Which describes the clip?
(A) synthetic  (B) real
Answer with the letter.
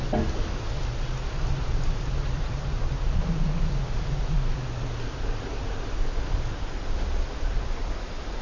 B